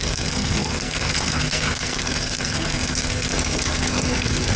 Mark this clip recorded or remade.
remade